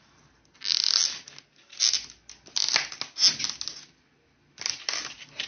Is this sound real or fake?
real